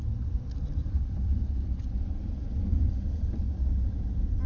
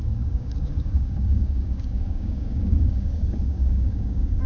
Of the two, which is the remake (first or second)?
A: second